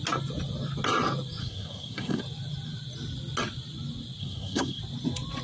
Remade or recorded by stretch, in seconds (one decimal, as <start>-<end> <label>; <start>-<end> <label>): 0.0-1.4 recorded; 1.4-2.2 remade; 2.2-4.2 recorded; 4.2-4.8 remade; 4.8-5.4 recorded